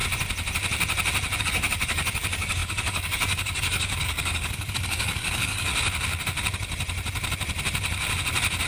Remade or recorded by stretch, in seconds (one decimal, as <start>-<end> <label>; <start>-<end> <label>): 0.0-1.4 recorded; 1.4-5.7 remade; 5.7-8.7 recorded